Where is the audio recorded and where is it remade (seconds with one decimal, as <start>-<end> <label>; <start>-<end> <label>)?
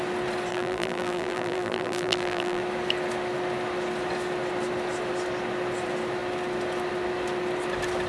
0.0-0.5 recorded; 0.5-2.6 remade; 2.6-8.1 recorded